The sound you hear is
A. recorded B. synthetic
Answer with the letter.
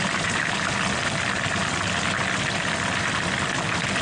A